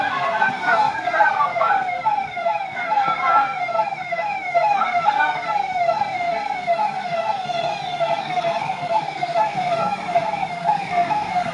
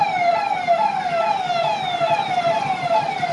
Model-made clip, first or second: first